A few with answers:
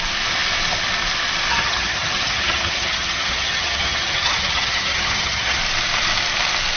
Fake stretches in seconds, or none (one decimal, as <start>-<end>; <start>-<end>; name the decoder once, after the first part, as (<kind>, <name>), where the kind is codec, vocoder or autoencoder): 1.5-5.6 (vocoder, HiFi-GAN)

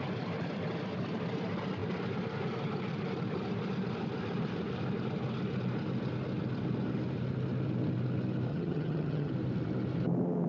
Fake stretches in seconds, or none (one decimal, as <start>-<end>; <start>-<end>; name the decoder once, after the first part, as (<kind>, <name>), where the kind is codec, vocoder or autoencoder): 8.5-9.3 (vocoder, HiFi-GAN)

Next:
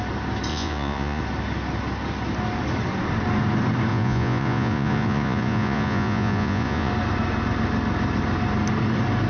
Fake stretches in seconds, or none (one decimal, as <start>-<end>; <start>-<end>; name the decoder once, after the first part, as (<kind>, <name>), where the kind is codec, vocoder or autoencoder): 0.5-1.2 (vocoder, Vocos); 3.9-6.9

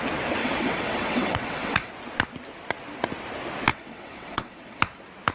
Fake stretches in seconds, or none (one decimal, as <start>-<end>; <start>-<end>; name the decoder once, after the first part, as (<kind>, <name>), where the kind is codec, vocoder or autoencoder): 0.4-1.9 (vocoder, WaveNeXt); 3.7-4.8